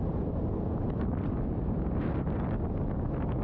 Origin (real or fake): real